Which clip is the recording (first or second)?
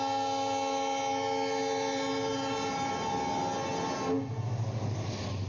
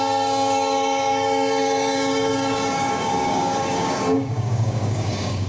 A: first